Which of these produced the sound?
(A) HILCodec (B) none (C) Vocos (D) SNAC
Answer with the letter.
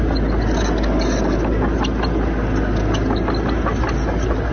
B